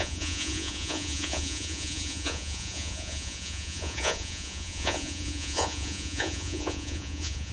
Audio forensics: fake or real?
fake